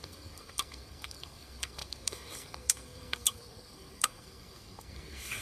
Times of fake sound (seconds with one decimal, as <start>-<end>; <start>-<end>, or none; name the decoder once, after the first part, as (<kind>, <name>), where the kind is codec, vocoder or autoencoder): 0.0-5.4 (codec, SNAC)